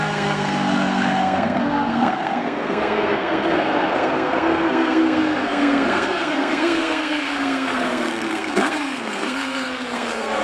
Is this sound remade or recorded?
remade